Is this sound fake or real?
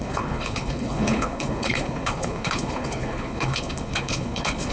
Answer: fake